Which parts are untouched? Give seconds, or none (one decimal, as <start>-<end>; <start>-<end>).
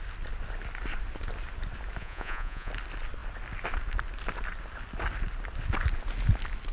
0.0-2.0; 2.7-6.7